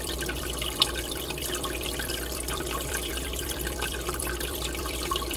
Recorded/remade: remade